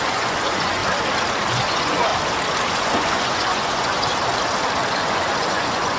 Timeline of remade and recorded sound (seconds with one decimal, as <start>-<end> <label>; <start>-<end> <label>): 0.0-0.8 remade; 0.8-1.5 recorded; 1.5-2.1 remade; 2.1-2.7 recorded; 2.7-4.1 remade; 4.1-4.9 recorded; 4.9-6.0 remade